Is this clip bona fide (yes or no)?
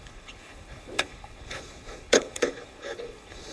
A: no